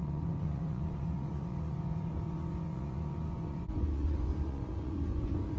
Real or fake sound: fake